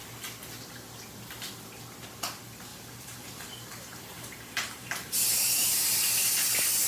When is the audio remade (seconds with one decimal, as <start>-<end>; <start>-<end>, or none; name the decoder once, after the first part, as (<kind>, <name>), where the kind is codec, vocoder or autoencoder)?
2.7-6.3 (vocoder, BigVGAN v2)